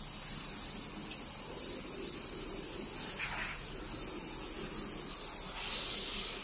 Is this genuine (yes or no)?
yes